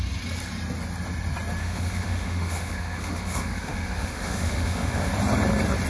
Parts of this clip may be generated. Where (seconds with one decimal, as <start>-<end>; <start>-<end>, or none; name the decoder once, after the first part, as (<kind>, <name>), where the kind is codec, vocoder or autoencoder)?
1.6-5.1 (autoencoder, DAC-VAE)